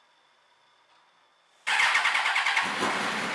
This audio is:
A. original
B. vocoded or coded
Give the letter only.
A